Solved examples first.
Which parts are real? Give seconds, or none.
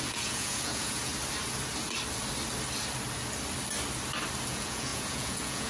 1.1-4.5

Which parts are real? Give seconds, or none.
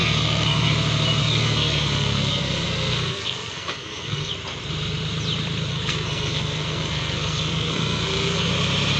0.7-1.2; 4.3-5.7; 8.5-9.0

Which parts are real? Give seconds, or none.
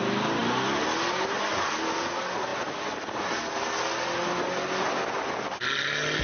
0.0-6.2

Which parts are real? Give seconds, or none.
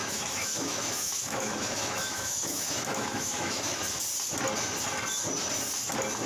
3.8-6.3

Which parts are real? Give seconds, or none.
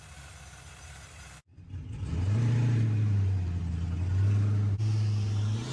0.0-1.5; 3.7-5.7